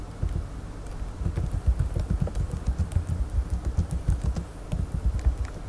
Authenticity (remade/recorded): recorded